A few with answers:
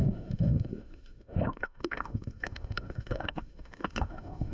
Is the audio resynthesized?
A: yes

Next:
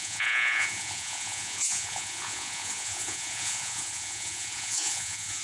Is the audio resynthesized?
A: yes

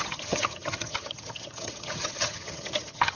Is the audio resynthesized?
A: yes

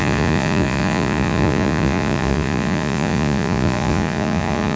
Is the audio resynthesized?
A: yes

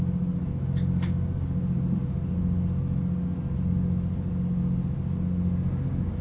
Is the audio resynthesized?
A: no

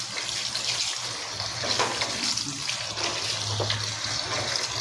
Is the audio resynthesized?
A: no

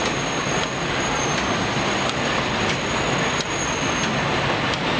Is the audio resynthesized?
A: no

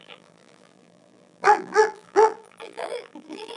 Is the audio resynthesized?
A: yes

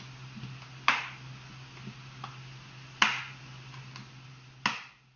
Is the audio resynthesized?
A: no